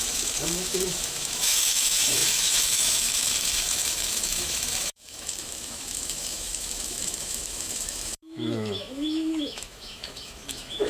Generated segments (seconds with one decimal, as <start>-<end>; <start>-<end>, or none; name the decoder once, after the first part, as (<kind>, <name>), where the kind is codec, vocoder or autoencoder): 0.0-10.9 (autoencoder, DAC-VAE)